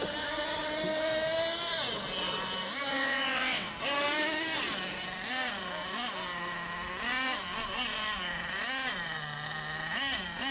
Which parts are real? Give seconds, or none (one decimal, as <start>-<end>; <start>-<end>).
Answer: 0.0-2.9; 3.7-10.5